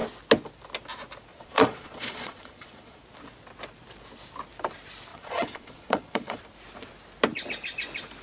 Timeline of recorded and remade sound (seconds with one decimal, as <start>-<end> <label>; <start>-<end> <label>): 0.0-1.3 recorded; 1.3-3.0 remade; 3.0-5.1 recorded; 5.1-6.4 remade; 6.4-8.2 recorded

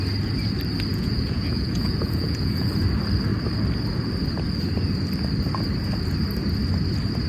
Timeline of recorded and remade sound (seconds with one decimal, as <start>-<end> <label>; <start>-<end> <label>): 0.0-0.9 recorded; 0.9-2.7 remade; 2.7-7.3 recorded

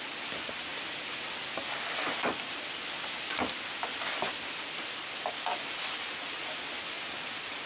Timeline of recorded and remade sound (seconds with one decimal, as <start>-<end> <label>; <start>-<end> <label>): 0.0-7.7 recorded

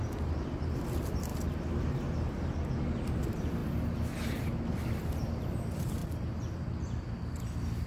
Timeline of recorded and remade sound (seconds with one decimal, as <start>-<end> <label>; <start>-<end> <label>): 0.0-1.3 remade; 1.3-3.2 recorded; 3.2-3.6 remade; 3.6-4.9 recorded; 4.9-6.0 remade; 6.0-6.5 recorded; 6.5-7.9 remade

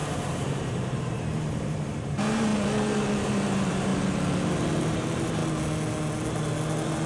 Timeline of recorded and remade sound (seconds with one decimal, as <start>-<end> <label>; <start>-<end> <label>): 0.0-2.5 remade; 2.5-3.3 recorded; 3.3-3.9 remade; 3.9-4.8 recorded; 4.8-5.4 remade; 5.4-7.1 recorded